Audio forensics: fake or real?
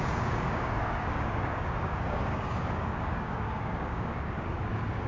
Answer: fake